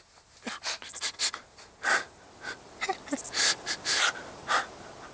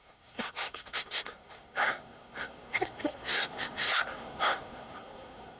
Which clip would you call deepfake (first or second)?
second